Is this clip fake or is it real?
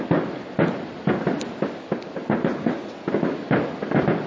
real